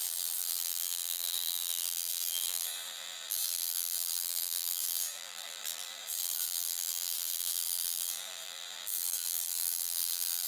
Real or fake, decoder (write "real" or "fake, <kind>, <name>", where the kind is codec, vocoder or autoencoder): fake, vocoder, BigVGAN v2